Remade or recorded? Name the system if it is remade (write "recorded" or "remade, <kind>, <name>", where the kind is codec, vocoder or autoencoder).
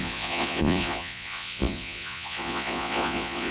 remade, vocoder, Vocos